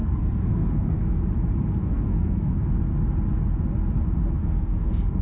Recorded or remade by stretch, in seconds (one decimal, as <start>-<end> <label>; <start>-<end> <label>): 0.0-1.2 remade; 1.2-1.8 recorded; 1.8-2.8 remade; 2.8-4.4 recorded; 4.4-5.2 remade